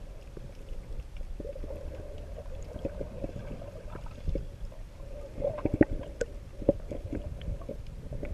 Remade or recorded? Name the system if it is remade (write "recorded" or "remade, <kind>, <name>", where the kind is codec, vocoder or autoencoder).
remade, vocoder, BigVGAN v2